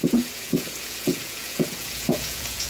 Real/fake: fake